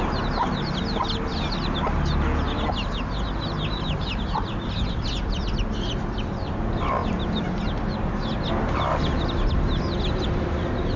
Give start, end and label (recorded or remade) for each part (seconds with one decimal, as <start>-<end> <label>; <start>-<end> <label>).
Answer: 0.0-11.0 recorded